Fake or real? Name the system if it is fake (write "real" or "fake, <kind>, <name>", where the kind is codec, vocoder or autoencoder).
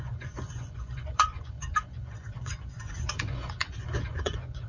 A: fake, vocoder, Vocos